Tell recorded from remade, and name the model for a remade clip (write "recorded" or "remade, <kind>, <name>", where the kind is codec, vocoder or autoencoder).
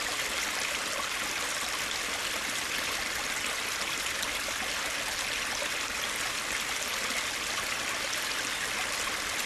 recorded